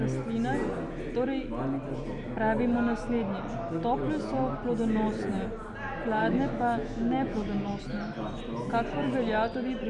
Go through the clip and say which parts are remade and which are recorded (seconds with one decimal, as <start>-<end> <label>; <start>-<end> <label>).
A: 0.0-6.2 recorded; 6.2-7.8 remade; 7.8-9.9 recorded